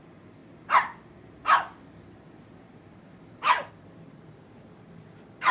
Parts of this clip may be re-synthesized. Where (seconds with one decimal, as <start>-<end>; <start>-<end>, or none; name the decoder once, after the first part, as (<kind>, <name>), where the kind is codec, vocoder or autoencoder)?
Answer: none

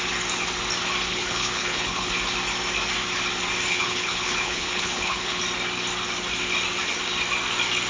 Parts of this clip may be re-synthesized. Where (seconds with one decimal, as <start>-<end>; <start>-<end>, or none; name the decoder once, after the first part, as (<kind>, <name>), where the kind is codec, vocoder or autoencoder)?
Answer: 1.1-2.1 (codec, HILCodec); 3.7-5.4

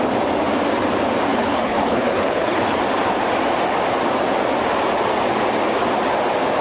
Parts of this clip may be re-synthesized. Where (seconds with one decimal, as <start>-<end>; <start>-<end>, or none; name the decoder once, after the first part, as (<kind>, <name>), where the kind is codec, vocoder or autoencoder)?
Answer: 1.3-2.8 (codec, HILCodec)

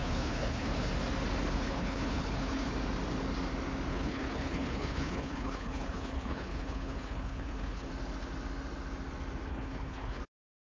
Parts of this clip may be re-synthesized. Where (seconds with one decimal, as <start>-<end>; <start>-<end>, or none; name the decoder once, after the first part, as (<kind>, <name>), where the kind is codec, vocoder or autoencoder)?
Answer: 0.0-0.9 (codec, HILCodec); 1.5-2.7; 3.9-7.9; 9.5-10.2